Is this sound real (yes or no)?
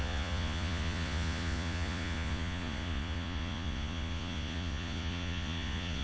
no